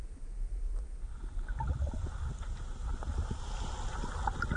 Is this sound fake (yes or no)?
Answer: no